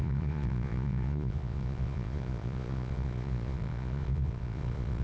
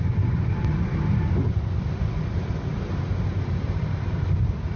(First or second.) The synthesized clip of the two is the first